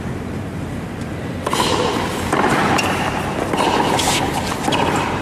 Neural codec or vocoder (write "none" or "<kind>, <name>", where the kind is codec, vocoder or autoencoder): none